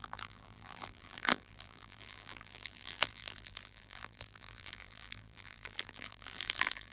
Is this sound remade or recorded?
remade